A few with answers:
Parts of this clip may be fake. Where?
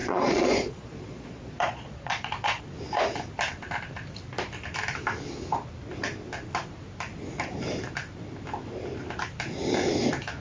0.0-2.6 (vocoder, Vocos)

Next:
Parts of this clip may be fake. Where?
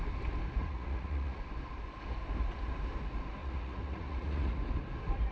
0.6-1.4 (vocoder, Vocos); 3.4-4.6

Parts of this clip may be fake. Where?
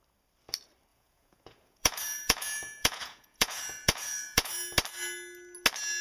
0.9-4.5 (vocoder, Vocos)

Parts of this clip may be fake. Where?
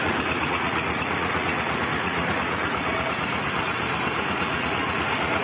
0.0-3.8 (vocoder, Vocos); 4.3-5.4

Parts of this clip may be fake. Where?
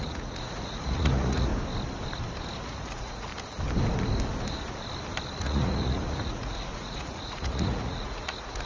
0.0-1.5 (vocoder, Vocos); 2.6-3.3; 5.4-8.7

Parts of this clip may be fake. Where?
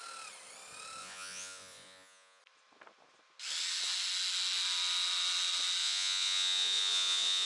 1.0-2.4 (vocoder, Vocos); 5.8-7.5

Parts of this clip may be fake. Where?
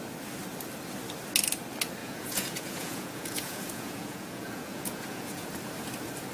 2.0-5.5 (vocoder, Vocos)